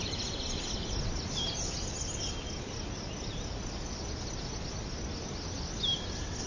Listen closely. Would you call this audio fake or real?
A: real